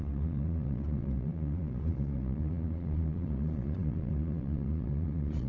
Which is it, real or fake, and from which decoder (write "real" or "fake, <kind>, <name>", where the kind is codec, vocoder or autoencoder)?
fake, vocoder, Vocos